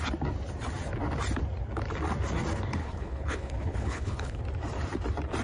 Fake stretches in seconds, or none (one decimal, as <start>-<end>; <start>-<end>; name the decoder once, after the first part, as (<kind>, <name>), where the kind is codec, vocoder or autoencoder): 2.8-4.4 (codec, HILCodec)